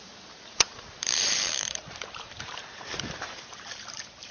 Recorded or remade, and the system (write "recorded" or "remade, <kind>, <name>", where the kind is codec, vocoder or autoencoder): remade, vocoder, BigVGAN v2